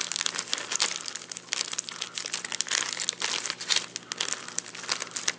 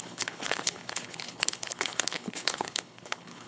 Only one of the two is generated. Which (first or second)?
second